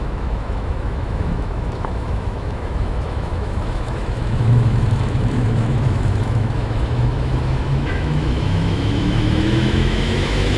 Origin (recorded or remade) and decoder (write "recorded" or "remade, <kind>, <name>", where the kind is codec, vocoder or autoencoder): remade, autoencoder, DAC-VAE